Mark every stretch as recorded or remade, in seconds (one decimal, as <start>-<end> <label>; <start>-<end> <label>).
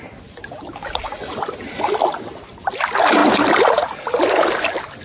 0.0-5.0 recorded